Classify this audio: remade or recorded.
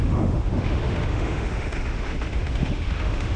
remade